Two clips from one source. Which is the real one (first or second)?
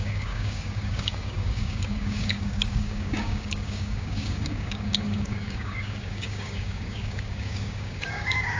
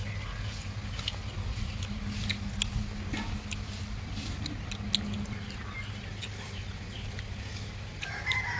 second